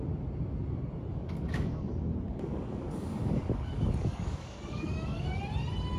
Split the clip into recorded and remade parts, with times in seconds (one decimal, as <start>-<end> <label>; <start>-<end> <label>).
0.0-1.1 recorded; 1.1-1.9 remade; 1.9-2.3 recorded; 2.3-5.4 remade; 5.4-6.0 recorded